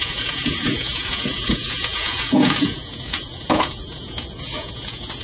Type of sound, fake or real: fake